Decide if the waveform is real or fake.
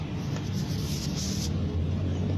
real